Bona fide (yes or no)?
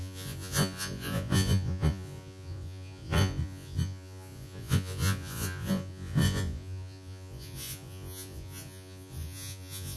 no